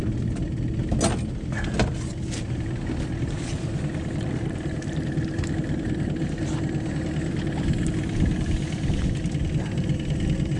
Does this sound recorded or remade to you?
recorded